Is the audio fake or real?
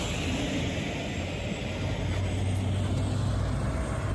real